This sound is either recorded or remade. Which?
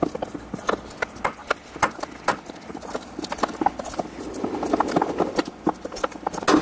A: recorded